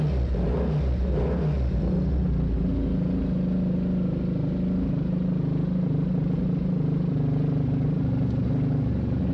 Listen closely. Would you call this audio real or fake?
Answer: real